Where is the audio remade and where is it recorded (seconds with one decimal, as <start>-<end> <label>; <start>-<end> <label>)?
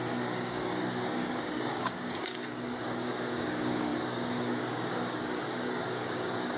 0.0-6.6 remade